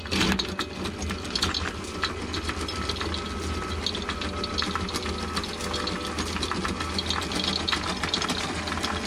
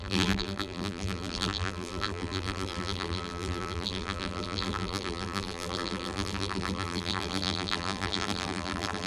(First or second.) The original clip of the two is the first